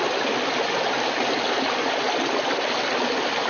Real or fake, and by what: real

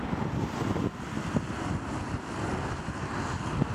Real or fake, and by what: real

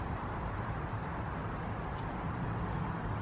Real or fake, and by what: fake, vocoder, BigVGAN v2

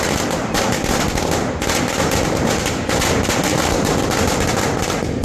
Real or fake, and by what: real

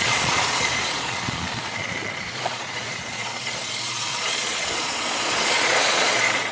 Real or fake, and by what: fake, vocoder, Vocos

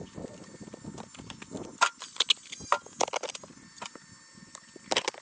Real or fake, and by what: real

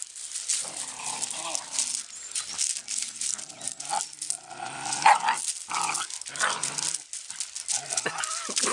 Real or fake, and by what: real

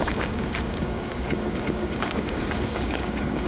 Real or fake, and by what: fake, codec, DAC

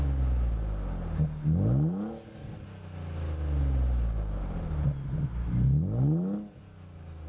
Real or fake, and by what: real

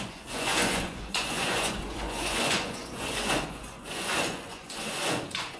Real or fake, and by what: fake, vocoder, Vocos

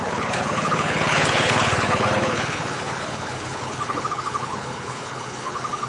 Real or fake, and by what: fake, codec, HILCodec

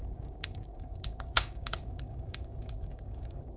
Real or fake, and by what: fake, codec, DAC